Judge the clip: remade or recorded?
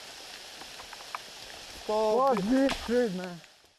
recorded